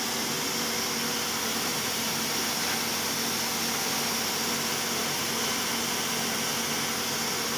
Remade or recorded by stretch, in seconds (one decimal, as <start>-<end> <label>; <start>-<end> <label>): 0.0-1.7 recorded; 1.7-2.7 remade; 2.7-7.6 recorded